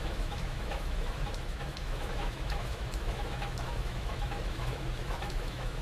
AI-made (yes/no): yes